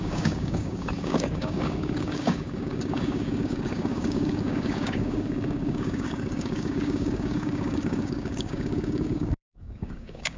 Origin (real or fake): fake